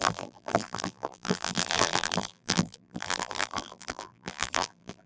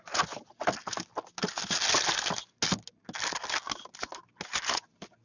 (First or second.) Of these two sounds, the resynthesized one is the first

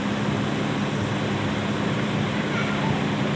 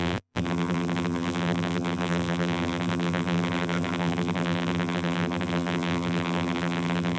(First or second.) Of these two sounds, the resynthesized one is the second